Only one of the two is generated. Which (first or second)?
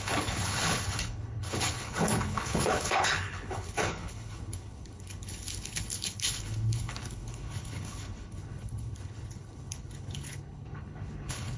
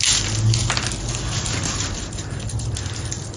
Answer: first